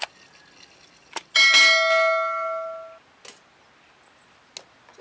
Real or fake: real